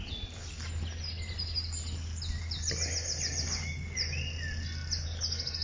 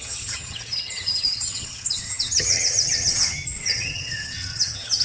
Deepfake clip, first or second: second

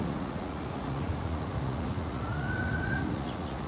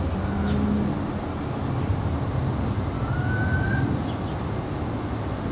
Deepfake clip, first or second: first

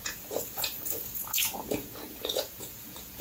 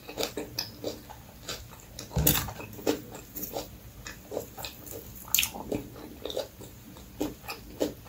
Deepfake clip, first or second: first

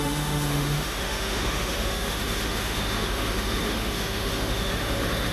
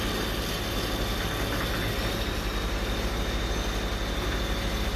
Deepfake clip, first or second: first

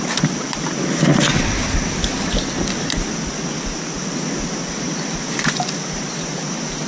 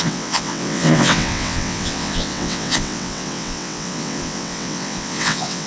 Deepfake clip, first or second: second